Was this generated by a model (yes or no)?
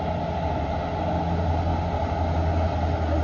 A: no